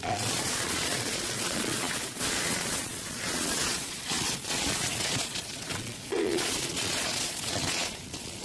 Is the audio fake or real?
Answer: fake